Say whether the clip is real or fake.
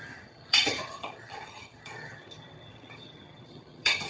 fake